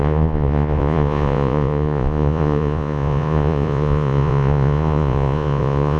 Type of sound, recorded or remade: remade